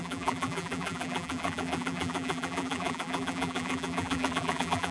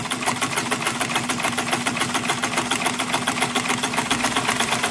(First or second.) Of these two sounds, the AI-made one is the first